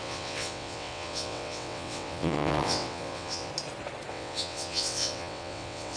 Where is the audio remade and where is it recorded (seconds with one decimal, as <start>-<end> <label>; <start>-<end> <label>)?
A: 0.0-3.5 remade; 3.5-4.1 recorded; 4.1-6.0 remade